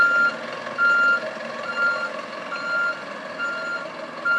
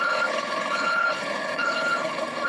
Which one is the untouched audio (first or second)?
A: first